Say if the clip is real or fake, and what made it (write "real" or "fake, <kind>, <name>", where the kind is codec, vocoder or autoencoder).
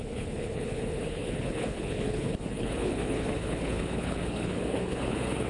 fake, codec, HILCodec